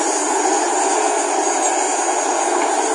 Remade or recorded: recorded